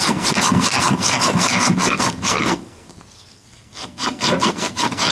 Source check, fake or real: fake